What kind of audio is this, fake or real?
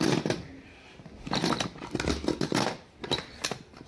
real